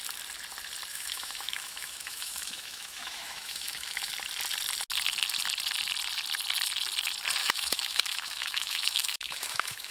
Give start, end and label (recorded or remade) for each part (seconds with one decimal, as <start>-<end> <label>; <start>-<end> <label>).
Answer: 0.0-0.9 recorded; 0.9-4.1 remade; 4.1-7.4 recorded; 7.4-9.9 remade

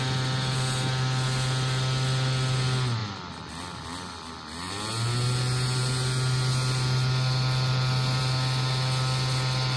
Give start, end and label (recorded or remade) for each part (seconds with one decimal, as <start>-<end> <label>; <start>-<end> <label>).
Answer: 0.0-9.8 recorded

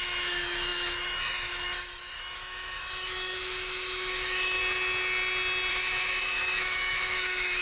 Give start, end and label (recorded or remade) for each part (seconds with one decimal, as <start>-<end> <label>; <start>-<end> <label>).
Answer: 0.0-4.6 remade; 4.6-5.7 recorded; 5.7-7.6 remade

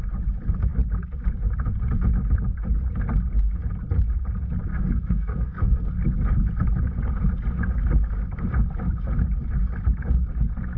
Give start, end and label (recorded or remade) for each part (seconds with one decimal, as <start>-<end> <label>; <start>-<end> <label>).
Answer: 0.0-4.7 recorded; 4.7-5.9 remade; 5.9-10.8 recorded

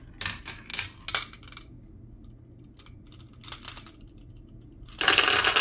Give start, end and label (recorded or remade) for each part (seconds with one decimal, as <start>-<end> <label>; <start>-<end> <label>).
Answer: 0.0-5.6 recorded

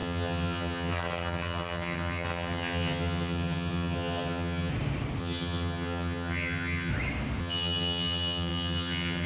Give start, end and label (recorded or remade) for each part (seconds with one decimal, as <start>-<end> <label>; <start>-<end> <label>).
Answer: 0.0-4.7 remade; 4.7-5.2 recorded; 5.2-6.9 remade; 6.9-7.4 recorded; 7.4-9.3 remade

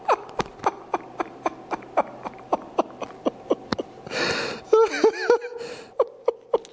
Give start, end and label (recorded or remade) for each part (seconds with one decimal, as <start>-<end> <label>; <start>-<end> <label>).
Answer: 0.0-6.7 recorded